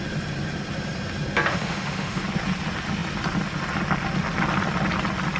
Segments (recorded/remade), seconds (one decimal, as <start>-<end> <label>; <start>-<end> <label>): 0.0-1.5 recorded; 1.5-2.2 remade; 2.2-5.4 recorded